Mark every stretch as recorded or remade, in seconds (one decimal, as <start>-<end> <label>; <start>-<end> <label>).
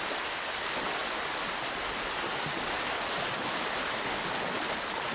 0.0-5.1 recorded